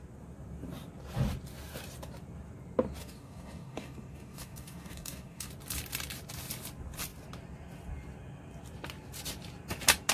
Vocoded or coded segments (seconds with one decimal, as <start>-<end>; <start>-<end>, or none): 3.0-5.5